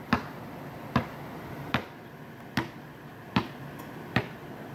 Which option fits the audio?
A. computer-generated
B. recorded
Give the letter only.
B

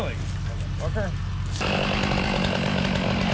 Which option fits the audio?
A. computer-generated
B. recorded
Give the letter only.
B